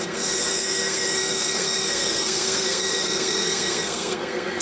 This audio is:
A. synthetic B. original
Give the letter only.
A